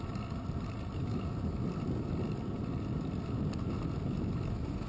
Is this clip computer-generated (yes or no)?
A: no